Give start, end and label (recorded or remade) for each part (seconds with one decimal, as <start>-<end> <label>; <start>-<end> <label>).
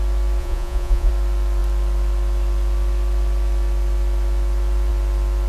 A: 0.0-0.4 recorded; 0.4-1.1 remade; 1.1-5.5 recorded